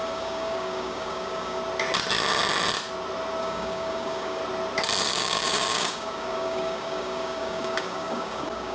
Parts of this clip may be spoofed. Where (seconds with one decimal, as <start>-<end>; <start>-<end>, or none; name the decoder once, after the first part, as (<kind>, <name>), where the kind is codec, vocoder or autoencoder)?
0.0-1.6 (codec, DAC); 3.4-4.4; 5.0-8.7